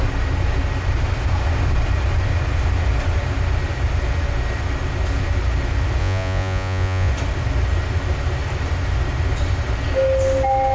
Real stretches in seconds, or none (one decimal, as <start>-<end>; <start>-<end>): 0.0-6.0; 7.1-10.7